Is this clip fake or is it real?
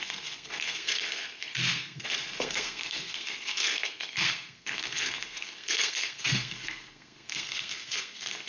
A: fake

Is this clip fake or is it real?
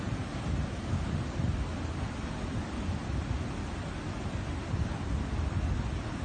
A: real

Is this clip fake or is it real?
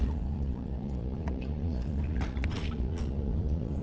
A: fake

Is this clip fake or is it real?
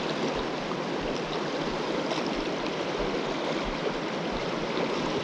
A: real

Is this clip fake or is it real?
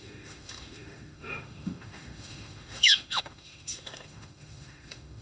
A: fake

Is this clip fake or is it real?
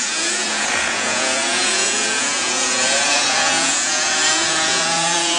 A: fake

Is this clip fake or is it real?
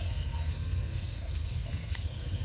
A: fake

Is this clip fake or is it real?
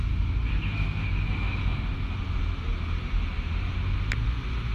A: real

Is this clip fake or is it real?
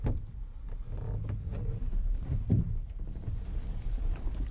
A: real